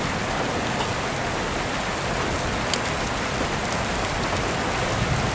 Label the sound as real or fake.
real